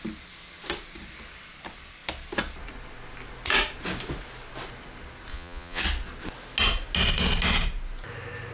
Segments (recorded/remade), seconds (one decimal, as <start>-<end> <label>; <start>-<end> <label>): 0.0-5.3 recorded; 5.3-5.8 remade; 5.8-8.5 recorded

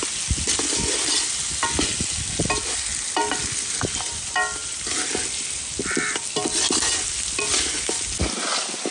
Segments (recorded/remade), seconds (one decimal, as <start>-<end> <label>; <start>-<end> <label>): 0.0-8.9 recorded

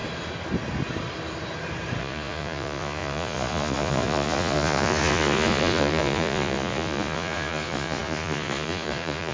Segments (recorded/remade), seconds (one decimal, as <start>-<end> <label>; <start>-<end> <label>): 0.0-2.0 recorded; 2.0-9.3 remade

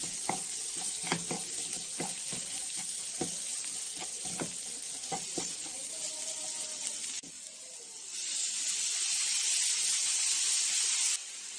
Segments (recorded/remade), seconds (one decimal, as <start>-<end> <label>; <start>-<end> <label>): 0.0-11.6 recorded

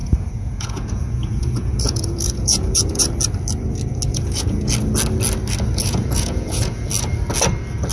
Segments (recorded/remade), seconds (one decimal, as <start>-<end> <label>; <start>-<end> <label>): 0.0-3.1 remade; 3.1-4.1 recorded; 4.1-4.7 remade; 4.7-5.8 recorded; 5.8-6.9 remade; 6.9-7.9 recorded

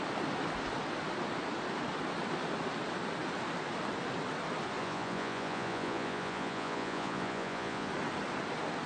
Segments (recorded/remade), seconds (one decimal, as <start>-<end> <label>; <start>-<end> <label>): 0.0-4.8 recorded; 4.8-7.9 remade; 7.9-8.9 recorded